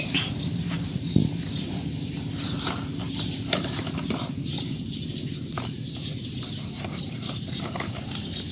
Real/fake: fake